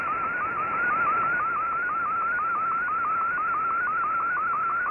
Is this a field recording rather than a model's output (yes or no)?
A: yes